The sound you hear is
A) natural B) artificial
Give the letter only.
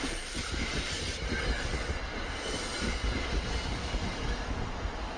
A